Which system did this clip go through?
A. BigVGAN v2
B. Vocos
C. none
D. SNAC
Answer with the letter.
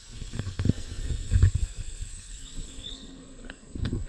D